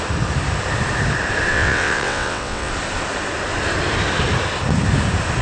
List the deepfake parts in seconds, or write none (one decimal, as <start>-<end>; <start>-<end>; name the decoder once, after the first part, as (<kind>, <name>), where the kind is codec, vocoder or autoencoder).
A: 1.5-2.7 (vocoder, WaveNeXt)